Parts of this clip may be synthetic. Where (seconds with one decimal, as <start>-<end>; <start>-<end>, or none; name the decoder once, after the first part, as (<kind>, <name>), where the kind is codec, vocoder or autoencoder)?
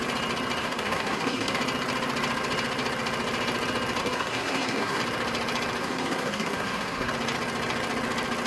0.6-1.6 (codec, SNAC); 4.0-5.0; 5.8-7.1